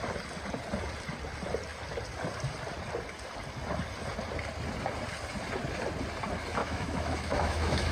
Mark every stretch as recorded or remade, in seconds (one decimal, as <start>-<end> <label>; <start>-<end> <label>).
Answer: 0.0-6.6 recorded; 6.6-7.9 remade

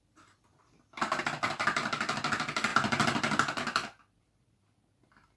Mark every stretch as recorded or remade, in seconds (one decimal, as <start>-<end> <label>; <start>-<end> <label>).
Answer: 0.0-5.4 recorded

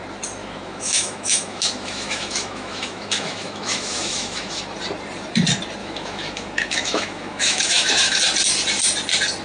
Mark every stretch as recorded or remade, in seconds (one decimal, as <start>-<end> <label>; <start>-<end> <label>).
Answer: 0.0-0.4 recorded; 0.4-4.6 remade; 4.6-5.8 recorded; 5.8-8.2 remade; 8.2-9.4 recorded

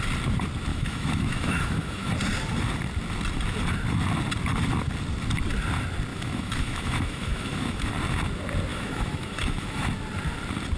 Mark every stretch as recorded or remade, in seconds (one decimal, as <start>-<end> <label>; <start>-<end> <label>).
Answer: 0.0-0.7 recorded; 0.7-2.1 remade; 2.1-6.1 recorded; 6.1-7.9 remade; 7.9-8.7 recorded; 8.7-9.9 remade; 9.9-10.8 recorded

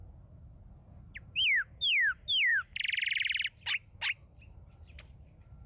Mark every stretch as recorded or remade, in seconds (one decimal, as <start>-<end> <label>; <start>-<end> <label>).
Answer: 0.0-5.7 recorded

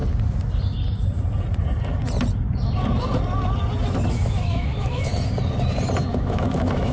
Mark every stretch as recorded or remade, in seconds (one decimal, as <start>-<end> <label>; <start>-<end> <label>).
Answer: 0.0-4.1 recorded; 4.1-5.1 remade; 5.1-6.0 recorded; 6.0-6.9 remade